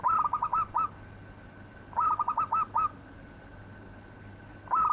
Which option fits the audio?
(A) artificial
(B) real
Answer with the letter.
B